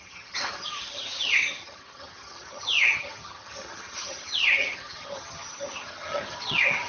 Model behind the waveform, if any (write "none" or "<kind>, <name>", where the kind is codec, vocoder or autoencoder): vocoder, HiFi-GAN